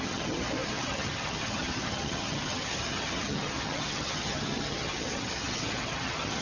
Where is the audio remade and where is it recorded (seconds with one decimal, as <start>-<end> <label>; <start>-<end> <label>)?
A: 0.0-6.4 remade

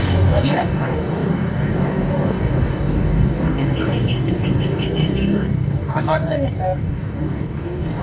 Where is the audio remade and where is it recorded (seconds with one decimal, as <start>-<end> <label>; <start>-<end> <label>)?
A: 0.0-8.0 remade

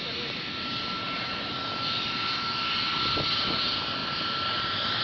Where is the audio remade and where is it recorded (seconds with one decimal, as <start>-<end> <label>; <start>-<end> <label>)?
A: 0.0-5.0 recorded

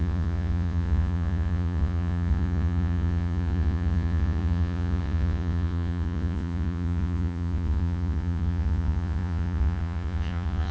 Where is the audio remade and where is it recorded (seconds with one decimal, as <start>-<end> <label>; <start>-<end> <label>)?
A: 0.0-10.7 remade